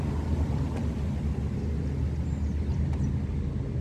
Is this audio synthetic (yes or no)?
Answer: no